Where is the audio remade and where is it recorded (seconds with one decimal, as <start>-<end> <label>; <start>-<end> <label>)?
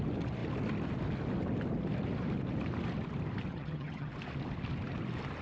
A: 0.0-3.5 recorded; 3.5-4.1 remade; 4.1-5.4 recorded